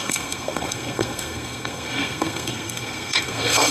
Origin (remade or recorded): remade